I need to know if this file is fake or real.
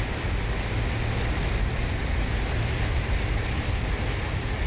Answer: real